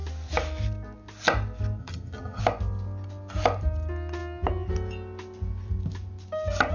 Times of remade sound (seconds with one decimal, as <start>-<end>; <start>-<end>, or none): 1.8-2.4